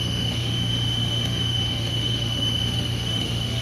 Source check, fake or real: fake